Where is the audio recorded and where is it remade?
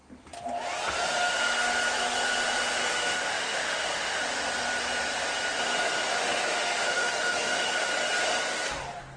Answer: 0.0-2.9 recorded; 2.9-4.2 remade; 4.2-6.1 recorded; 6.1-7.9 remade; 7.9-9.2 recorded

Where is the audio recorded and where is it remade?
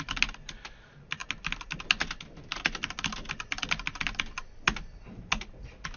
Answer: 0.0-6.0 recorded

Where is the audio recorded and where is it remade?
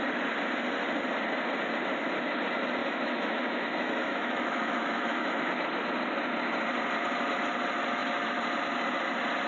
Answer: 0.0-2.8 recorded; 2.8-5.5 remade; 5.5-9.5 recorded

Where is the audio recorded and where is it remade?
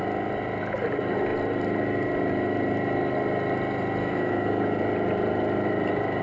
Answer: 0.0-4.0 recorded; 4.0-4.6 remade; 4.6-6.2 recorded